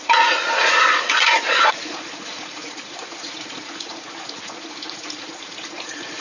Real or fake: fake